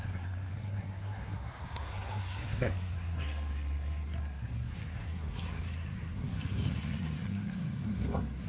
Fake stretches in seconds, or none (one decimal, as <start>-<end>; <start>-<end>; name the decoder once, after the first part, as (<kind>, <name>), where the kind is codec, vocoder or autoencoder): 0.0-8.5 (codec, SNAC)